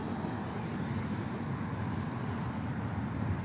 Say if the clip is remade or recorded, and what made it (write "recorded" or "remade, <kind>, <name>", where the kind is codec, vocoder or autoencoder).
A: recorded